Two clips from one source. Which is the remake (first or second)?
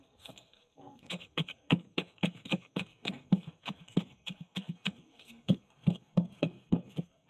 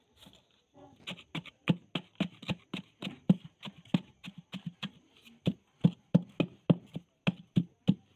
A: first